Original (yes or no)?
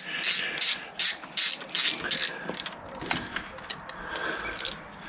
yes